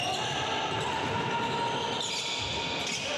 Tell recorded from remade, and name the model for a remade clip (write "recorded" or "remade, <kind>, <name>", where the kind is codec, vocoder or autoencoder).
recorded